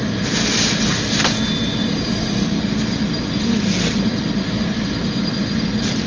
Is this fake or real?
real